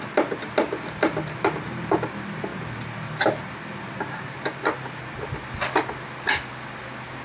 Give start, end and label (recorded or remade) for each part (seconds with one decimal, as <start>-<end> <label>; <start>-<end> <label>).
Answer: 0.0-7.2 recorded